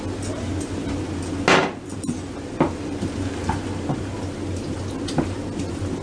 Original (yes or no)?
yes